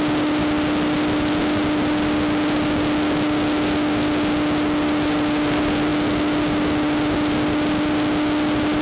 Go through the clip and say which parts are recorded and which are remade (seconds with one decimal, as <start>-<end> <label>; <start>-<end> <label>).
0.0-8.8 recorded